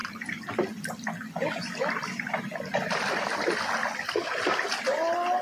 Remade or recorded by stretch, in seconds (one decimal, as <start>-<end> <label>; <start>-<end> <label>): 0.0-5.4 recorded